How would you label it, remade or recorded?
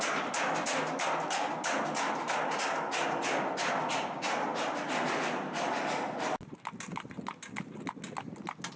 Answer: recorded